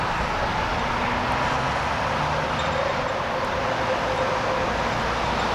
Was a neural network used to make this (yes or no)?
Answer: no